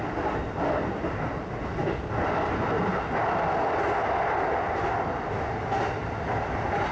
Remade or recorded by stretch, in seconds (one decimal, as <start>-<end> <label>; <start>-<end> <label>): 0.0-1.8 recorded; 1.8-2.5 remade; 2.5-4.0 recorded; 4.0-5.3 remade; 5.3-6.9 recorded